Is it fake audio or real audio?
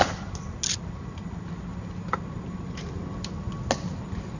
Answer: real